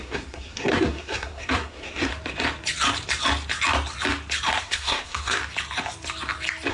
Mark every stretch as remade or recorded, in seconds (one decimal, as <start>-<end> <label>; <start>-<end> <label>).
0.0-2.1 remade; 2.1-4.6 recorded; 4.6-5.4 remade; 5.4-6.7 recorded